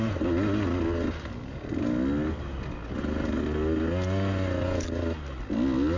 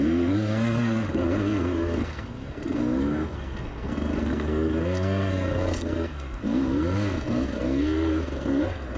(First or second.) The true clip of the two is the first